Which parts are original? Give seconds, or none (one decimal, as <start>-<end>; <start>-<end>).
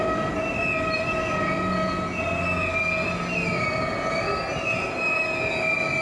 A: 0.0-4.5; 5.1-6.0